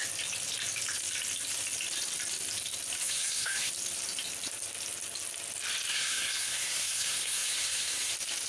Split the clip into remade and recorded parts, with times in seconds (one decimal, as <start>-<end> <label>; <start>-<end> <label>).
0.0-3.0 recorded; 3.0-3.7 remade; 3.7-5.9 recorded; 5.9-8.1 remade; 8.1-8.5 recorded